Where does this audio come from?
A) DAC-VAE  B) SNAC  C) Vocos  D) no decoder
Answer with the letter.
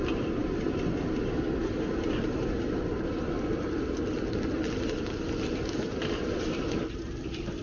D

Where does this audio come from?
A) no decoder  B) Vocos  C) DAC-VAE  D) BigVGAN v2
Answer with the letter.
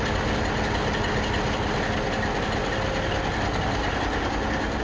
A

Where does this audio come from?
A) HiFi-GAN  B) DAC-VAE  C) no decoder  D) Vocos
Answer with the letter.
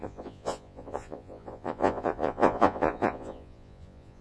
D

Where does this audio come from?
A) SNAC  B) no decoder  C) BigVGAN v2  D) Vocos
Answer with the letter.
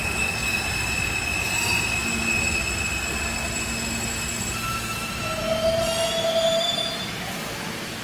B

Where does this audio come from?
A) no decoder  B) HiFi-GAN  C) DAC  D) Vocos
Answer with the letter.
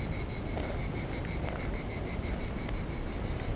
A